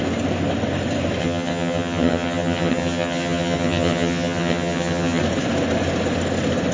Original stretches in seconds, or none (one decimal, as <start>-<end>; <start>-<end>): 0.0-1.2; 5.2-6.7

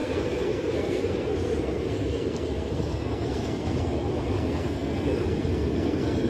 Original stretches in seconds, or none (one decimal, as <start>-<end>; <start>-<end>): none